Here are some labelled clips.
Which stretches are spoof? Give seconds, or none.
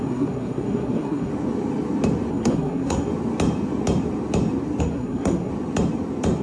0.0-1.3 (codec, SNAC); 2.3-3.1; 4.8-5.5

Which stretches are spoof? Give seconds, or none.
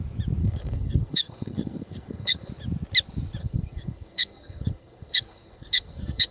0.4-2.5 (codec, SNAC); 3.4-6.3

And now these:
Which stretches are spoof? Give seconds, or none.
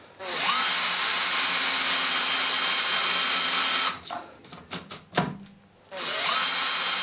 none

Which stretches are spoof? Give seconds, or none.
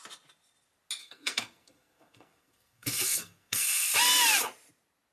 1.0-3.9 (codec, SNAC)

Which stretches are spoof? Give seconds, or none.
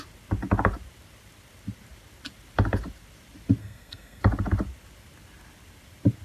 3.6-4.2 (codec, SNAC)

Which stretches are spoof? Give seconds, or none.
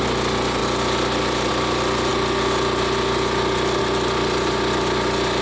none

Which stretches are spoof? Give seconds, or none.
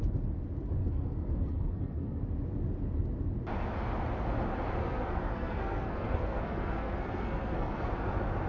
0.8-2.2 (codec, SNAC); 4.8-7.9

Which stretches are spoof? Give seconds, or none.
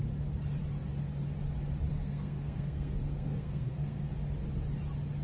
1.9-4.1 (codec, SNAC)